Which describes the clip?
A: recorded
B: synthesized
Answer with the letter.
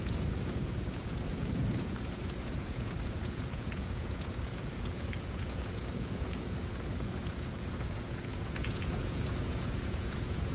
B